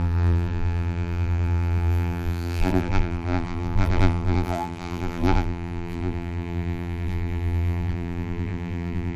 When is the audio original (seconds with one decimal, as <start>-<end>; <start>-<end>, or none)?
none